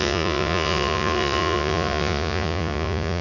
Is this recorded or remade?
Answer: remade